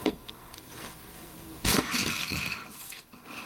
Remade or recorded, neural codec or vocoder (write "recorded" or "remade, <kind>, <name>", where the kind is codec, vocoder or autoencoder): remade, codec, SNAC